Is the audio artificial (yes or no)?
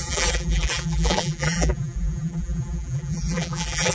yes